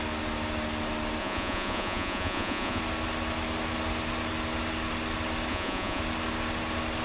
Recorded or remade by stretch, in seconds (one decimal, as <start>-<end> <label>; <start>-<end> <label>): 0.0-1.2 recorded; 1.2-2.8 remade; 2.8-5.5 recorded; 5.5-6.0 remade; 6.0-7.0 recorded